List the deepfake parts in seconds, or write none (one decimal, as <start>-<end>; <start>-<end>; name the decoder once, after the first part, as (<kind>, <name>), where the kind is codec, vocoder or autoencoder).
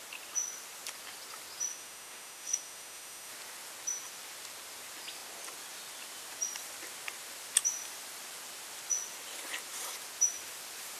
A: 1.7-3.3 (autoencoder, DAC-VAE)